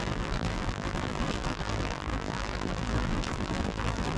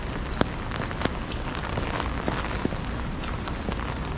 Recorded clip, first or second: second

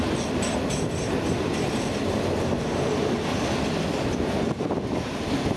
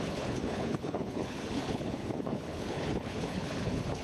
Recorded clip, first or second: first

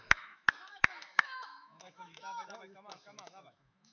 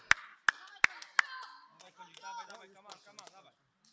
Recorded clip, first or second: second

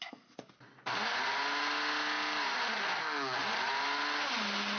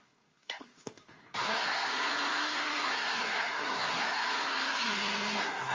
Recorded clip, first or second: first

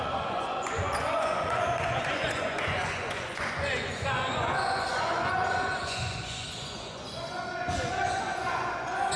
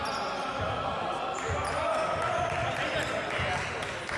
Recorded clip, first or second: second